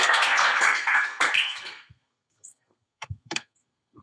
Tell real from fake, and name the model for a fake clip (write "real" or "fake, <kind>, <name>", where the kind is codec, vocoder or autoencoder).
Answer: fake, codec, SNAC